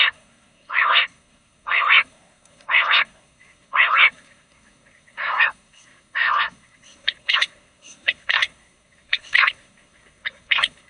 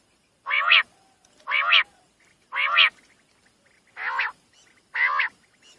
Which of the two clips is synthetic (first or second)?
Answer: first